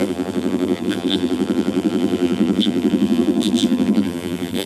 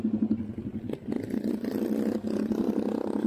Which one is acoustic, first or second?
second